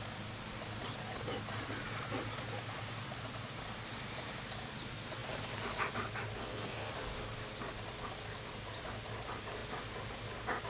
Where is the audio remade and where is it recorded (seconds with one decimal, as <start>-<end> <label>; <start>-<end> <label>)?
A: 0.0-6.4 recorded; 6.4-6.9 remade; 6.9-10.7 recorded